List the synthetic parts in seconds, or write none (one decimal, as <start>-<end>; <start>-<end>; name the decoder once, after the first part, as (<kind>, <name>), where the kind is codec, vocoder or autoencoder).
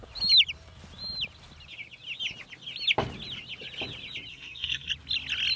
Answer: 4.3-4.9 (codec, SNAC)